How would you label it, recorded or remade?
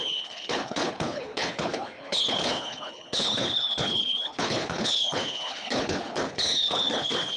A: remade